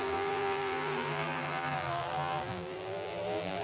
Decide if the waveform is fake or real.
fake